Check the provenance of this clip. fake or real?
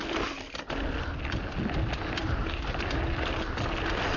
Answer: real